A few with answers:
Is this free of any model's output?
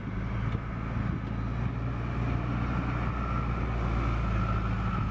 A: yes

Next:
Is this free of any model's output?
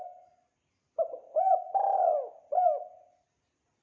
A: yes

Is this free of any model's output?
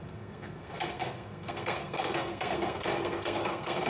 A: no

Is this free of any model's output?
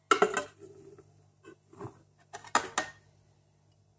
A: yes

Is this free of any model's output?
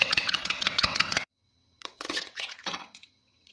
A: no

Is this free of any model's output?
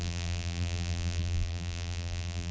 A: no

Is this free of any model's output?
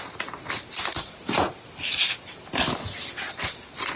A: yes